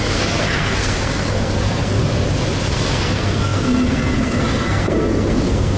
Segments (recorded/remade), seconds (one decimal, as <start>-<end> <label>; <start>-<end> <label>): 0.0-2.0 remade; 2.0-2.6 recorded; 2.6-5.8 remade